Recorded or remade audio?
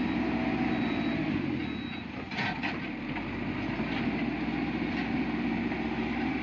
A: recorded